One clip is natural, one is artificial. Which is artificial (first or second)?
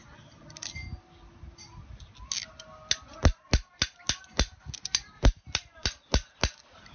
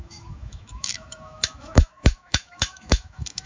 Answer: second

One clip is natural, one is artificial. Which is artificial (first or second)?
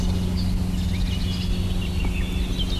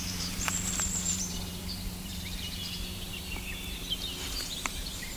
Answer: second